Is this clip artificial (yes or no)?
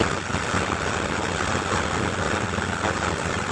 no